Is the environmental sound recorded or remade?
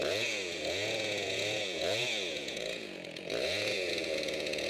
remade